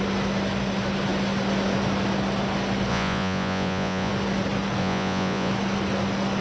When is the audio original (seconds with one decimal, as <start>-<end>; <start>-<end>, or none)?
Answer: 0.0-2.9; 4.1-4.8; 5.5-6.4